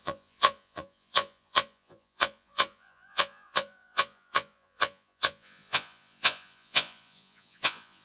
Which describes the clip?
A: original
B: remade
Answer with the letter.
B